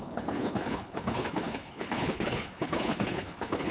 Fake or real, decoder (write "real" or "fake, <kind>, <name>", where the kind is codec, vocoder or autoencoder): fake, codec, HILCodec